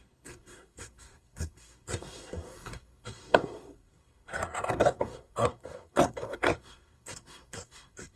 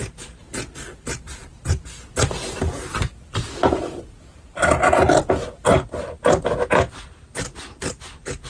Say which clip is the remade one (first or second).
first